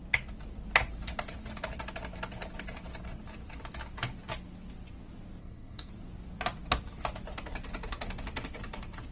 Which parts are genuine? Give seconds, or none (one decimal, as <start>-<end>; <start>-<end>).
0.0-5.4; 5.9-9.1